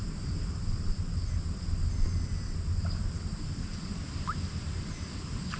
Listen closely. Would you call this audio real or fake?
real